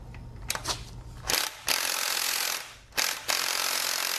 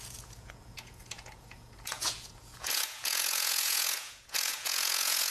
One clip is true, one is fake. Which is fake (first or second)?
second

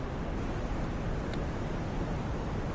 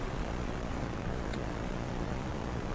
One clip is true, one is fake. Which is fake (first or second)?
second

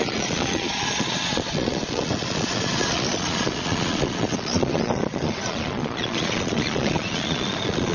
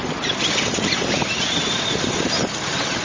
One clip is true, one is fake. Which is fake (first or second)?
first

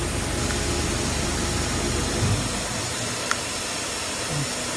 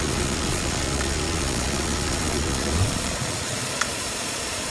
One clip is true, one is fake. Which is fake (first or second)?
second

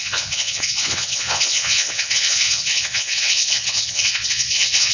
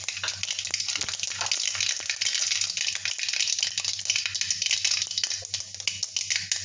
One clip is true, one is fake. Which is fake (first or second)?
first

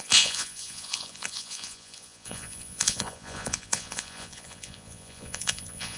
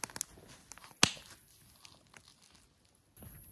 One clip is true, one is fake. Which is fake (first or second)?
first